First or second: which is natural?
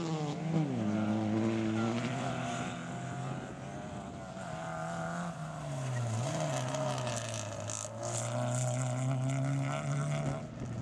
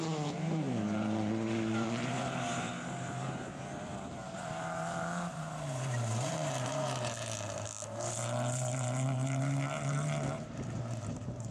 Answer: first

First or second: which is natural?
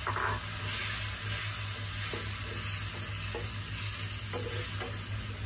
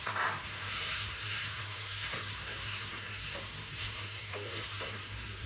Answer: first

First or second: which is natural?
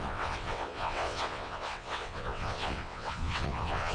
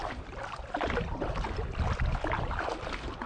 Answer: second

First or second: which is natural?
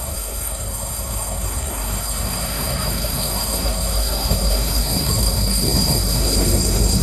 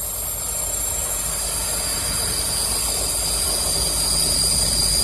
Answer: second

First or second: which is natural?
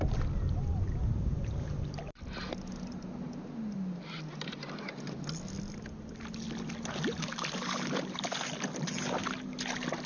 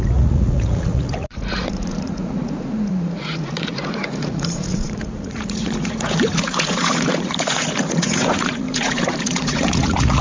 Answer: first